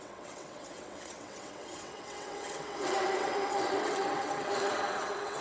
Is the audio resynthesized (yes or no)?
yes